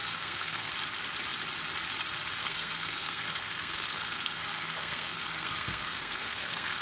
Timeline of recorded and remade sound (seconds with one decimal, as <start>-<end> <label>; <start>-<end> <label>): 0.0-0.7 remade; 0.7-2.4 recorded; 2.4-6.8 remade